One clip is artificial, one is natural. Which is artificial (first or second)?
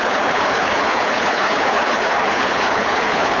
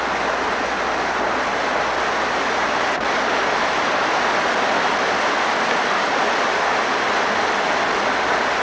first